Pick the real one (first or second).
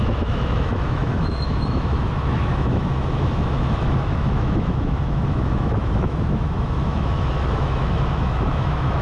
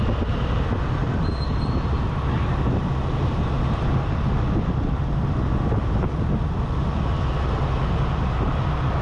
second